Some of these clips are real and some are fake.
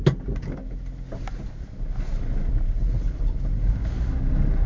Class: real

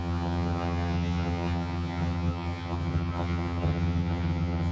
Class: fake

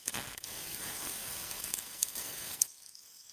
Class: fake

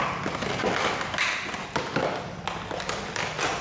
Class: real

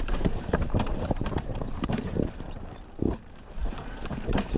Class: fake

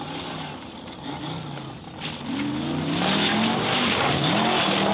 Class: real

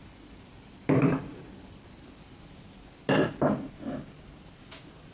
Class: real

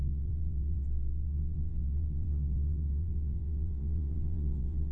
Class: fake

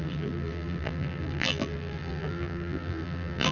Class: fake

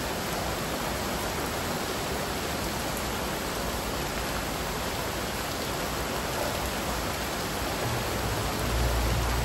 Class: real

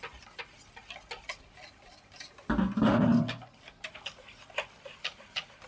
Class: real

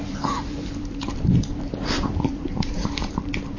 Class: fake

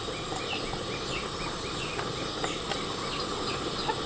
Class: real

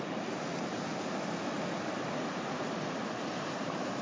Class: real